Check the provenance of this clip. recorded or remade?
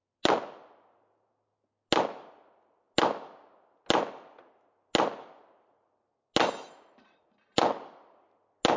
recorded